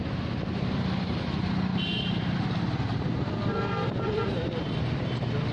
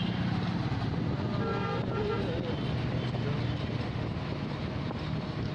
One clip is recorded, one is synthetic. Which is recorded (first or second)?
second